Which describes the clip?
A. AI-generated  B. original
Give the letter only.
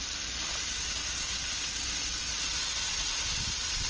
B